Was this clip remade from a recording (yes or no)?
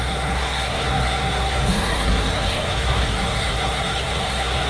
yes